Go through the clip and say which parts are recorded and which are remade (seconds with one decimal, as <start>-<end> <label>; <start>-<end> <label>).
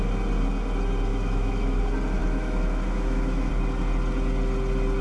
0.0-1.1 recorded; 1.1-1.8 remade; 1.8-2.2 recorded; 2.2-3.5 remade; 3.5-5.0 recorded